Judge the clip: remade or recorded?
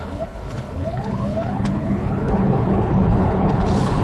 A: remade